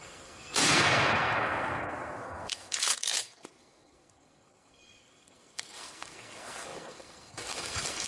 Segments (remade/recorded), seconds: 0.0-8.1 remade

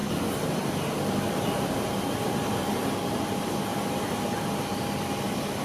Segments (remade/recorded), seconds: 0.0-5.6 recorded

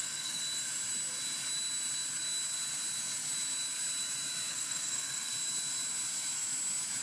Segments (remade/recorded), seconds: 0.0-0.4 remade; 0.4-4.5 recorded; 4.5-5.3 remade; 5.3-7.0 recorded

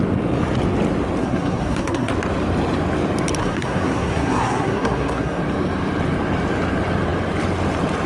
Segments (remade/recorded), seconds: 0.0-1.2 recorded; 1.2-2.1 remade; 2.1-3.4 recorded; 3.4-5.4 remade; 5.4-8.1 recorded